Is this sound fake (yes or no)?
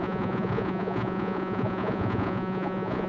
yes